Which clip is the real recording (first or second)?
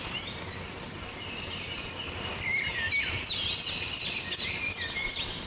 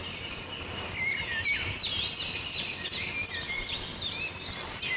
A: second